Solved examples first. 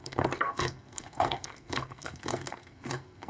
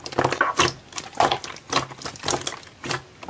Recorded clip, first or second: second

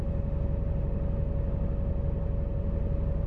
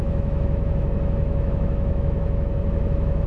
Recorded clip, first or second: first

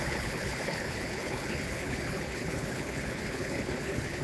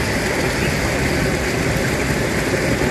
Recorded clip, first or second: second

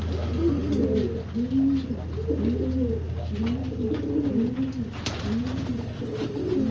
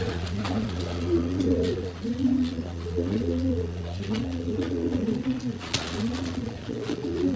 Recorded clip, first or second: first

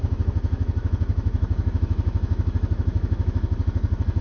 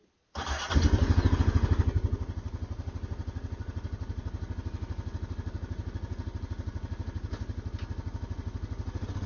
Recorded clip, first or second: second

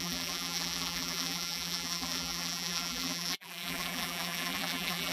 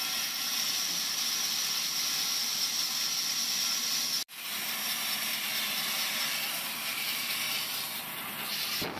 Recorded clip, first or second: second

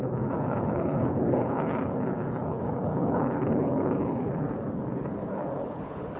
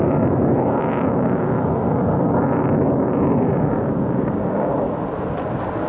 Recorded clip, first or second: second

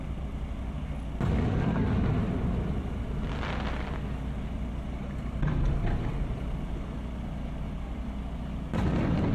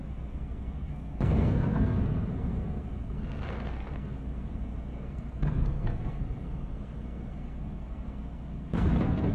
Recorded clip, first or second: first